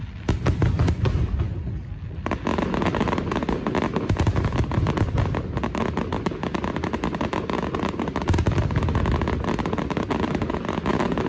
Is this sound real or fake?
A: real